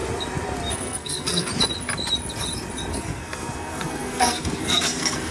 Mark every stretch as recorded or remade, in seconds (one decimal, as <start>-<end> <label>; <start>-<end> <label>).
0.0-0.7 recorded; 0.7-1.5 remade; 1.5-2.9 recorded; 2.9-5.3 remade